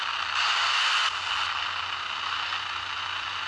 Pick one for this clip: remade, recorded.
recorded